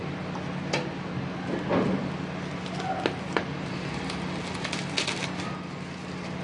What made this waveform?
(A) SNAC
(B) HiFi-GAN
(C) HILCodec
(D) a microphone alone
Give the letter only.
D